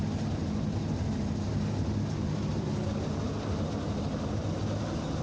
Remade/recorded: recorded